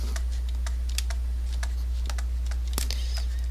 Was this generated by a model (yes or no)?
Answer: no